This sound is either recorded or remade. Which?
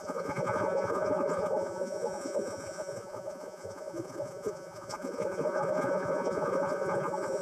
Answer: remade